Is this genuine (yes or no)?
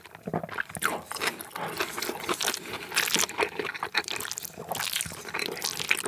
yes